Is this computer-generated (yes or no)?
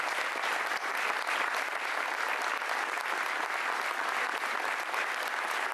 no